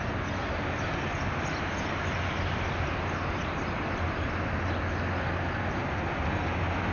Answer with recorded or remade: recorded